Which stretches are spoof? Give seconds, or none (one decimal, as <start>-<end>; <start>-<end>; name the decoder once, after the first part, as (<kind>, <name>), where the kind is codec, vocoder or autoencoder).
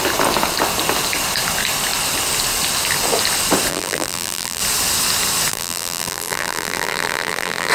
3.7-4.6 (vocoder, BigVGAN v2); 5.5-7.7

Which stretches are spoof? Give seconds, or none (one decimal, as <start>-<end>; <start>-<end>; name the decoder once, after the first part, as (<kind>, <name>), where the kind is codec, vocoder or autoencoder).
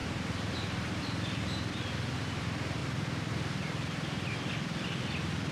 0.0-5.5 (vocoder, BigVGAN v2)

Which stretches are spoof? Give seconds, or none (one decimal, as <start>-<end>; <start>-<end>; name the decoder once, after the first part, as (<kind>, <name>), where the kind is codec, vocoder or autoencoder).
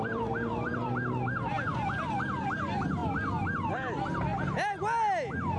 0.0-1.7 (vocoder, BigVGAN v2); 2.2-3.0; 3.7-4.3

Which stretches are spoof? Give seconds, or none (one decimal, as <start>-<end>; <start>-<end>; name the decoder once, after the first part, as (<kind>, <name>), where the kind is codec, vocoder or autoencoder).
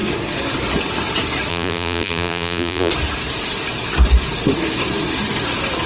1.5-2.9 (vocoder, BigVGAN v2)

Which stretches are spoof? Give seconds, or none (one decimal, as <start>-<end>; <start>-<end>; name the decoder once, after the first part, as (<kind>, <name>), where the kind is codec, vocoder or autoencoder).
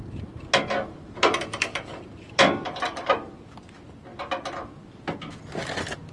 1.5-3.5 (vocoder, BigVGAN v2)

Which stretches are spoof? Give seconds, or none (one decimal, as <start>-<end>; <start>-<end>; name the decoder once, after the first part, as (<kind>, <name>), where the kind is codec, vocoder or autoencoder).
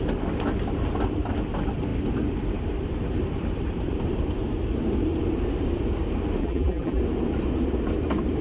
6.4-7.0 (vocoder, BigVGAN v2)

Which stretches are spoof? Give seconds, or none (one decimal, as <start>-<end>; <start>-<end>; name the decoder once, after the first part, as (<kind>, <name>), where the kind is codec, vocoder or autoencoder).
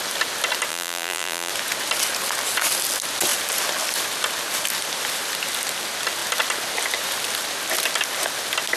0.7-1.5 (vocoder, BigVGAN v2)